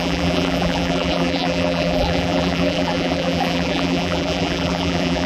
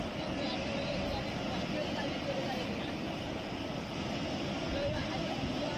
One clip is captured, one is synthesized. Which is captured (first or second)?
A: second